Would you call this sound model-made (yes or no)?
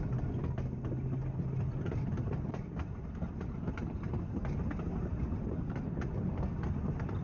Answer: no